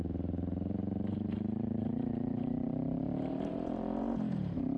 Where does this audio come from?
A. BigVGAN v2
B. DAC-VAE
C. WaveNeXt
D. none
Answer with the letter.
A